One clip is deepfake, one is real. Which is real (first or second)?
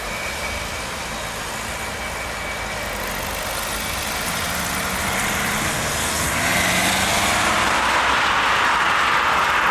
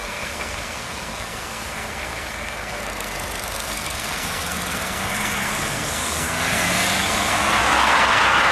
first